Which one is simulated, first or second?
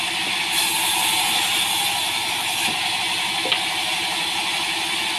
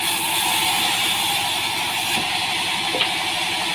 second